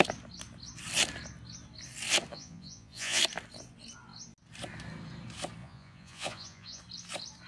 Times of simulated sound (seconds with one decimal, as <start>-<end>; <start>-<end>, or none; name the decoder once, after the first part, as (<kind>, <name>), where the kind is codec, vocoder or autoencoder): 2.3-3.2 (vocoder, Vocos); 5.6-6.8